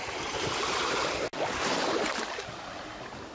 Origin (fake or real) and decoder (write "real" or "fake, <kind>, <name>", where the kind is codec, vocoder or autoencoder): real